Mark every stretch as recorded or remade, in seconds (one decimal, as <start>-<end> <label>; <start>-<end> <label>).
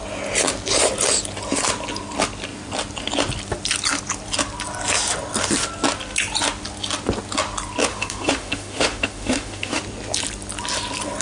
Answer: 0.0-7.9 recorded; 7.9-9.8 remade; 9.8-11.2 recorded